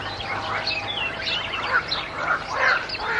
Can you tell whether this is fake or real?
fake